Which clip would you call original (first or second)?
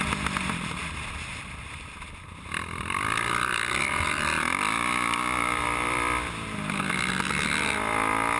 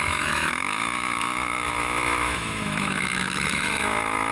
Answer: first